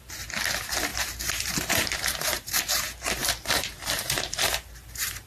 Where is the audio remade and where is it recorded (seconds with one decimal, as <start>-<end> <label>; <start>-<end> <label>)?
0.0-0.9 recorded; 0.9-2.6 remade; 2.6-3.2 recorded; 3.2-5.3 remade